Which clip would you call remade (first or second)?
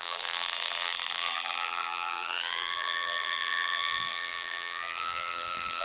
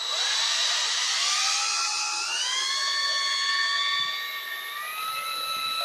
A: first